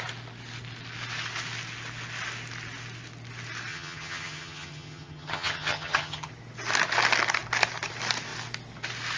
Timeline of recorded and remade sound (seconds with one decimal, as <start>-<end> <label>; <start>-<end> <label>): 0.0-3.7 recorded; 3.7-6.3 remade; 6.3-9.2 recorded